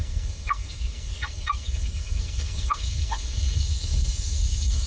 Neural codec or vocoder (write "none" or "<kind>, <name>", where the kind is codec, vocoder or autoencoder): codec, SNAC